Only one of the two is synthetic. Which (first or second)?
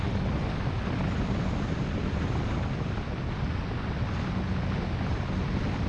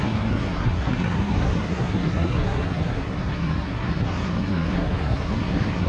second